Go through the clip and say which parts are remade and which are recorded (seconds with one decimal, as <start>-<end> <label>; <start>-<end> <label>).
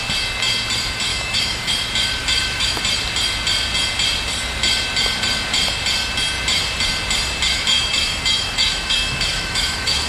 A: 0.0-1.1 recorded; 1.1-1.7 remade; 1.7-2.2 recorded; 2.2-2.8 remade; 2.8-7.7 recorded; 7.7-10.1 remade